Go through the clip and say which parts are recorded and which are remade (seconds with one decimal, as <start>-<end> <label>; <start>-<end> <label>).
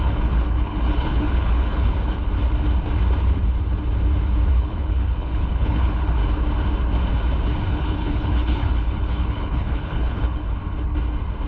0.0-2.3 remade; 2.3-4.5 recorded; 4.5-6.2 remade; 6.2-7.7 recorded; 7.7-10.6 remade; 10.6-11.5 recorded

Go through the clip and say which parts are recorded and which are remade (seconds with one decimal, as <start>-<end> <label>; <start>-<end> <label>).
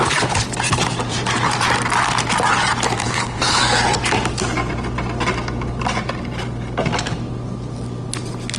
0.0-3.0 recorded; 3.0-3.6 remade; 3.6-8.6 recorded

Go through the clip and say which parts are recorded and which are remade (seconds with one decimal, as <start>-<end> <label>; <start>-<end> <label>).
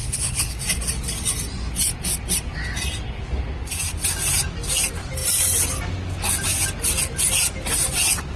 0.0-0.6 remade; 0.6-8.4 recorded